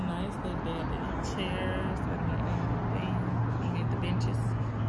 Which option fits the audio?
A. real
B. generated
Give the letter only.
A